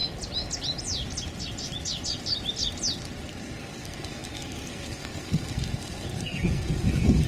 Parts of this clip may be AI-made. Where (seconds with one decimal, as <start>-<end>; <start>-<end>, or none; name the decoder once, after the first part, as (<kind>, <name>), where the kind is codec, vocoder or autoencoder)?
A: 3.4-7.3 (codec, SNAC)

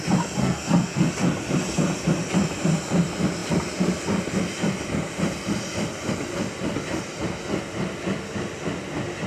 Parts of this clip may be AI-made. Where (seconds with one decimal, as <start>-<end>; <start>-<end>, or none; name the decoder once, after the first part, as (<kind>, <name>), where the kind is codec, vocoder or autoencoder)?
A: 0.4-1.1 (codec, SNAC)

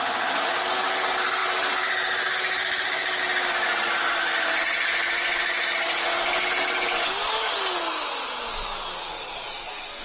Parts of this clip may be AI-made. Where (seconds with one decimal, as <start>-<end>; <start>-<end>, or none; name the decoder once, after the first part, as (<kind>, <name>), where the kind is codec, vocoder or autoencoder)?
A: none